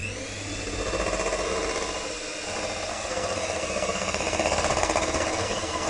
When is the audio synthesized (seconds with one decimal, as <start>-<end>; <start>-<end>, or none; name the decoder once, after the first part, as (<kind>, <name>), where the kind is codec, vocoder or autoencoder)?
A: 2.9-5.9 (codec, SNAC)